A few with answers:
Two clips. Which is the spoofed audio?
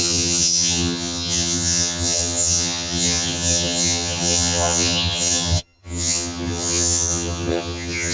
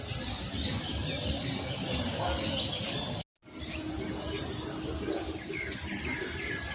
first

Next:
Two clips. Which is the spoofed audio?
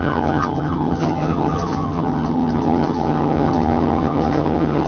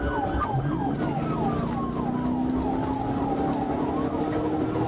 first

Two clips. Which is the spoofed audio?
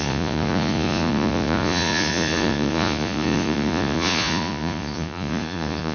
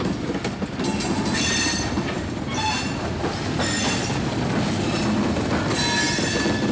first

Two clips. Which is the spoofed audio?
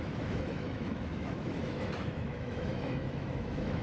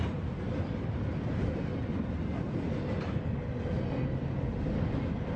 first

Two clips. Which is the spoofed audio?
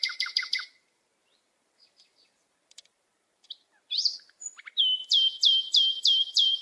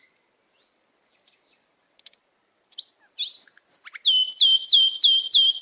first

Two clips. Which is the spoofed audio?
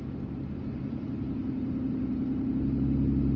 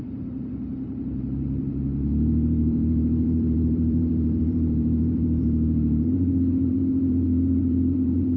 second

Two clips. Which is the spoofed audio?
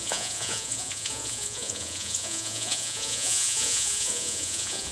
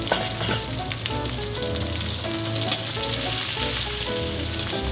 first